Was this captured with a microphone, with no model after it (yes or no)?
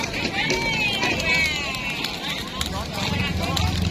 yes